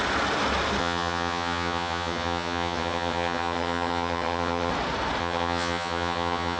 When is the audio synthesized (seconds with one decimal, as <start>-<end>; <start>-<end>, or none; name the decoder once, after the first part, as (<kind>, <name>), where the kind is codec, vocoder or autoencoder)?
0.8-4.7 (vocoder, HiFi-GAN); 5.2-6.6